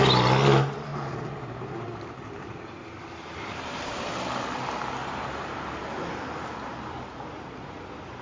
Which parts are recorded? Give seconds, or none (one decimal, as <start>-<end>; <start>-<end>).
0.0-0.9; 4.0-5.0; 6.2-8.2